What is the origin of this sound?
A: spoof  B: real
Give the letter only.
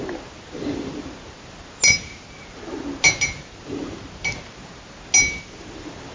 B